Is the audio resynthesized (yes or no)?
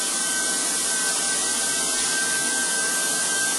no